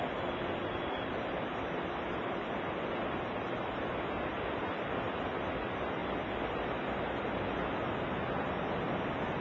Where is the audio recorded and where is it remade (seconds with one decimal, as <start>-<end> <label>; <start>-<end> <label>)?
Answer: 0.0-9.4 recorded